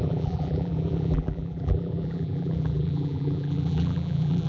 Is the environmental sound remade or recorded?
remade